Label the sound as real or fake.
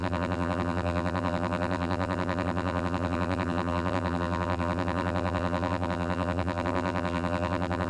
fake